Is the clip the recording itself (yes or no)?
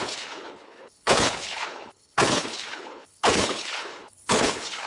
no